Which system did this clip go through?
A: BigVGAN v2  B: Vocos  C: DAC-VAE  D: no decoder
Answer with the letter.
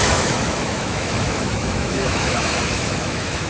C